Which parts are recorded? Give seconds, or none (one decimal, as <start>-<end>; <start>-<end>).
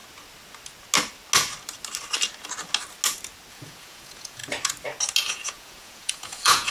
0.0-3.5; 4.4-5.3